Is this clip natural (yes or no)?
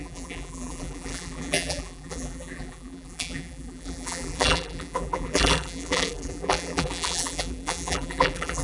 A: no